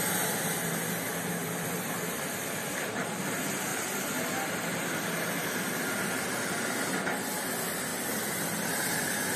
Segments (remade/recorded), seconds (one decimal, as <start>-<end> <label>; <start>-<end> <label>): 0.0-1.4 recorded; 1.4-3.2 remade; 3.2-7.9 recorded; 7.9-9.4 remade